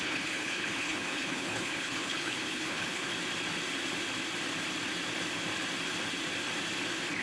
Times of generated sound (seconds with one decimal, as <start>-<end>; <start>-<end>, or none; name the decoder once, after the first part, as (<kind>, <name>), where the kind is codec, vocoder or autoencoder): 0.0-3.1 (codec, HILCodec)